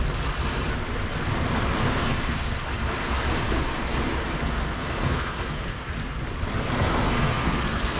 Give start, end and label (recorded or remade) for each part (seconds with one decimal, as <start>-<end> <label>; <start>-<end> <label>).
0.0-1.8 recorded; 1.8-2.5 remade; 2.5-4.3 recorded; 4.3-5.9 remade; 5.9-6.7 recorded; 6.7-8.0 remade